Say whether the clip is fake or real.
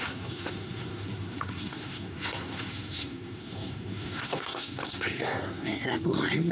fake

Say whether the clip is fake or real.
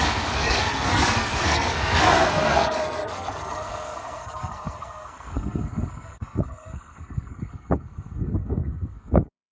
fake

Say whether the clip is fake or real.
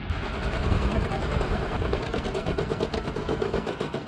fake